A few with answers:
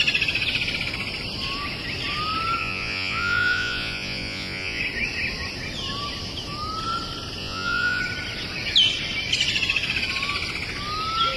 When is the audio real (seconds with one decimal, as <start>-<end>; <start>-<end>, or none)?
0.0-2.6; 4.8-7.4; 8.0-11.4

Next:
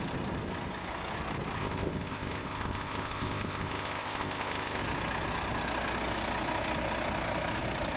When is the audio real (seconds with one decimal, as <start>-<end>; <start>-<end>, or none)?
0.0-1.6; 4.8-8.0

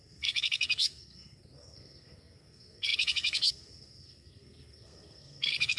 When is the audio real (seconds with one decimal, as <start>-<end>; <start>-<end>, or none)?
none

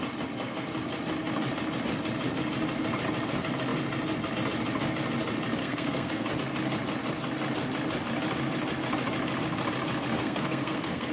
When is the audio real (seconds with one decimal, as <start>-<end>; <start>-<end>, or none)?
0.0-5.6; 6.3-10.2

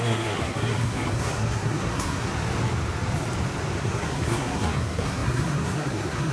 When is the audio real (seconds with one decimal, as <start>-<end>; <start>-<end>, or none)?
2.3-3.8